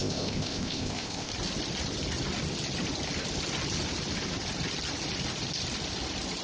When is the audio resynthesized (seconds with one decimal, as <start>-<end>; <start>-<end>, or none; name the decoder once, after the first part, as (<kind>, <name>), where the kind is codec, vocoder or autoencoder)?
0.0-1.3 (codec, ZipCodec)